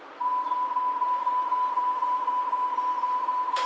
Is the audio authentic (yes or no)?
no